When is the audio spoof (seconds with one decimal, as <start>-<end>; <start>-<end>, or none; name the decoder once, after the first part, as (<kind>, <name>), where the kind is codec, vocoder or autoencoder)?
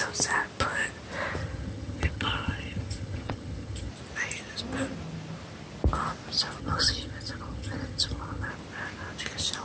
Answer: 1.4-3.9 (vocoder, HiFi-GAN); 6.6-8.5